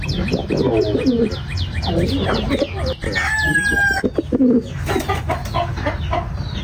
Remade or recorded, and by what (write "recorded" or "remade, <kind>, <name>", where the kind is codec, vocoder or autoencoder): recorded